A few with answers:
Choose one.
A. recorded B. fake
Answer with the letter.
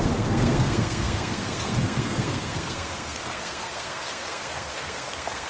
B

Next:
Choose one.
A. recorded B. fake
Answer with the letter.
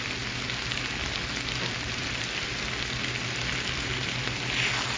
A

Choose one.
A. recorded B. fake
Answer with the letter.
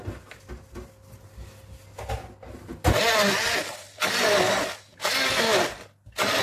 A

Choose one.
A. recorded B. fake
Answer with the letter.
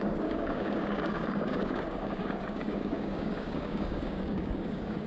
B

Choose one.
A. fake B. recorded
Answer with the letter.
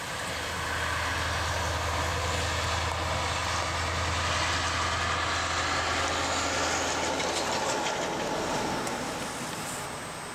B